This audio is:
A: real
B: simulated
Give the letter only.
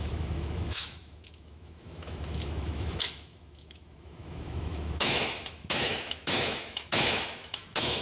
B